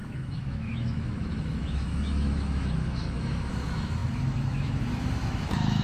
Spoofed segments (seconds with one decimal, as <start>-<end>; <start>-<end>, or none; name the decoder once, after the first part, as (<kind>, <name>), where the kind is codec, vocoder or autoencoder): 0.0-5.8 (autoencoder, DAC-VAE)